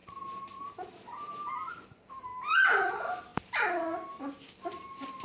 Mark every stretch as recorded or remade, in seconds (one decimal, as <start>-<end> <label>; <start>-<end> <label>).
0.0-2.3 remade; 2.3-2.9 recorded; 2.9-5.2 remade